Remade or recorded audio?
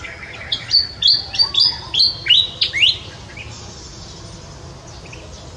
recorded